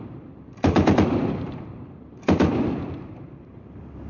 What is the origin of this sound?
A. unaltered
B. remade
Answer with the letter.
B